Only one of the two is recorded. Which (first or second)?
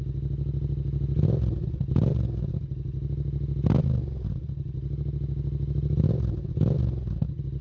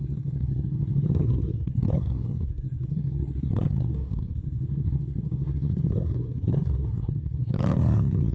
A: first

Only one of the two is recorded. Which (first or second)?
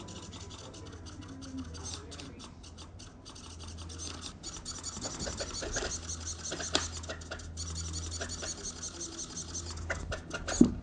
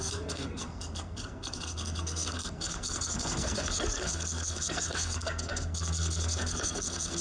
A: first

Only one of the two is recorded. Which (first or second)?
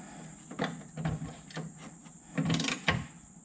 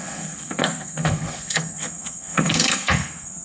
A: first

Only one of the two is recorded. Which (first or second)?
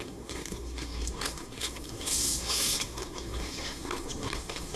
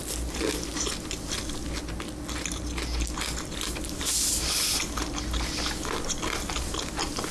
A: second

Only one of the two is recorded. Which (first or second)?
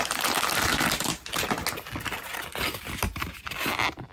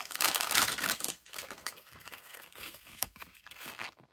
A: first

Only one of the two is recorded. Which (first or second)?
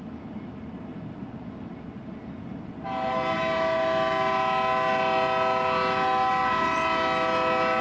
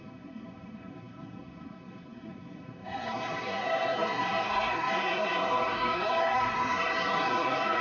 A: first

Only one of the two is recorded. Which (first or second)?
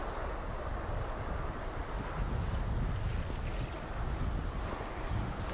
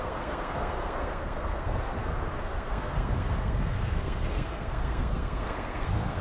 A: first